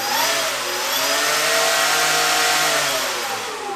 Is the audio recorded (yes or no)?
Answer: yes